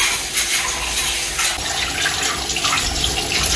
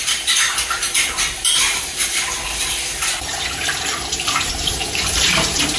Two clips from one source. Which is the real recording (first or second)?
first